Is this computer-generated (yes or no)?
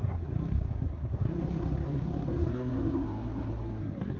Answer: yes